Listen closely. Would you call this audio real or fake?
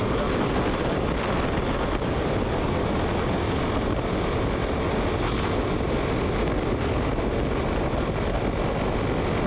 real